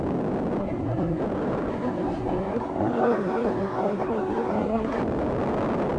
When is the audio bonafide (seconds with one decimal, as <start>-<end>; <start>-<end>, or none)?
0.0-0.6; 1.2-1.7; 5.0-6.0